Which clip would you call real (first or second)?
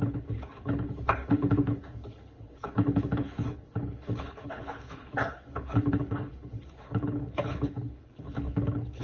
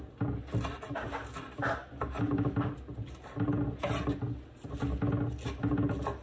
second